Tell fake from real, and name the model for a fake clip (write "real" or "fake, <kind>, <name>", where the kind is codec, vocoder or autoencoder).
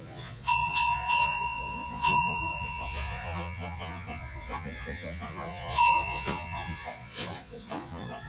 fake, vocoder, Vocos